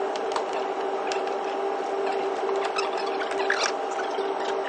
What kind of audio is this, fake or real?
real